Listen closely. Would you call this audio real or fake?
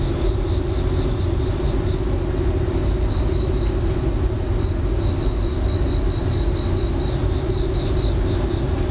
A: real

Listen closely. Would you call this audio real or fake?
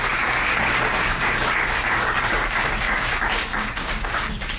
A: fake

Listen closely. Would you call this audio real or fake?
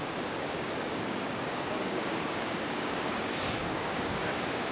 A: fake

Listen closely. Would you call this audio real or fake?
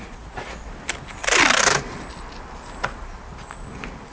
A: real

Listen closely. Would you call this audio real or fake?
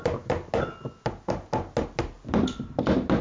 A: real